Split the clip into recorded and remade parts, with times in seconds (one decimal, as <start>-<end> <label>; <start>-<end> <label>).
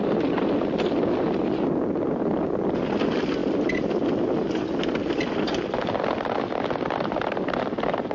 0.0-8.1 recorded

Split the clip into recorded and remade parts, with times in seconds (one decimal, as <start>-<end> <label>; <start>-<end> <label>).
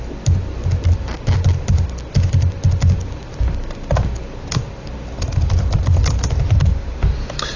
0.0-7.6 recorded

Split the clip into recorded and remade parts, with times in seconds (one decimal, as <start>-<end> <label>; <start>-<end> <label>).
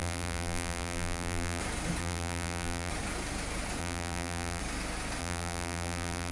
0.0-1.6 remade; 1.6-2.0 recorded; 2.0-2.9 remade; 2.9-3.8 recorded; 3.8-4.6 remade; 4.6-5.2 recorded; 5.2-6.3 remade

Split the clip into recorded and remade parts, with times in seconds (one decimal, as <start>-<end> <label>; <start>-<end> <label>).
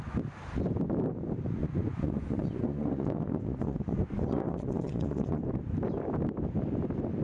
0.0-1.6 recorded; 1.6-5.4 remade; 5.4-7.2 recorded